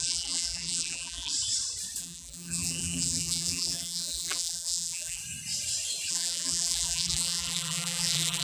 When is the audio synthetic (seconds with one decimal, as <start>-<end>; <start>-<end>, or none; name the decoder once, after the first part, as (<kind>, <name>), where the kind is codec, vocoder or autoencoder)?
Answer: 0.0-1.3 (vocoder, BigVGAN v2); 2.0-5.2; 6.1-8.4